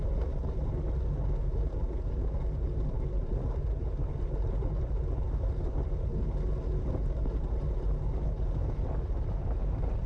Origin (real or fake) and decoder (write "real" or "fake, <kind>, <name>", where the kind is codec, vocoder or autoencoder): fake, vocoder, BigVGAN v2